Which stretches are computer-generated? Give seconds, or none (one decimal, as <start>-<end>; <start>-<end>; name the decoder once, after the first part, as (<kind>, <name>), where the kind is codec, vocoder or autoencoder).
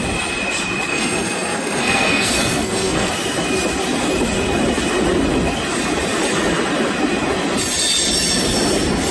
0.9-3.1 (codec, SNAC)